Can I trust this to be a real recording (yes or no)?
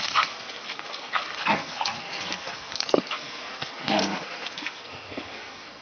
no